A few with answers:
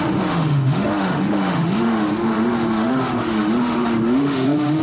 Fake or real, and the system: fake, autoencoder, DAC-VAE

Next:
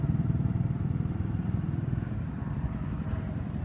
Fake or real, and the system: real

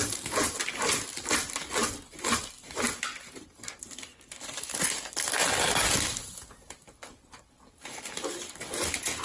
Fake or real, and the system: real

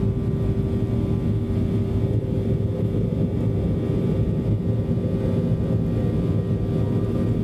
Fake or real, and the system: real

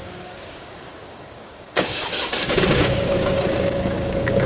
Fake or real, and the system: fake, codec, DAC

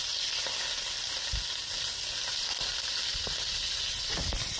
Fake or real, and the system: real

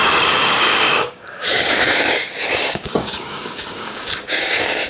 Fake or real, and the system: fake, codec, DAC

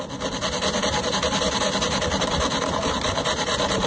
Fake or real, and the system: real